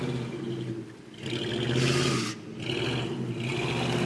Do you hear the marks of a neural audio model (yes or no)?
no